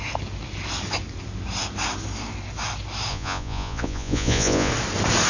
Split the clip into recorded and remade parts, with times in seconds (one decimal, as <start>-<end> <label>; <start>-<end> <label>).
0.0-3.1 recorded; 3.1-4.7 remade; 4.7-5.3 recorded